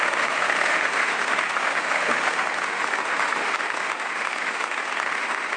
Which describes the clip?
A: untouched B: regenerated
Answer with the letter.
B